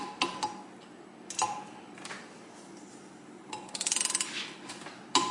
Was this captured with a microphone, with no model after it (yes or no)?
yes